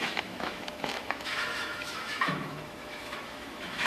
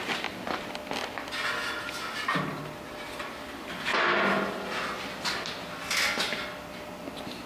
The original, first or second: second